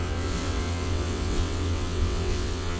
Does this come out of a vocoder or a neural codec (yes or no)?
yes